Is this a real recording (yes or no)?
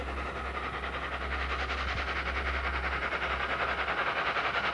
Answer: yes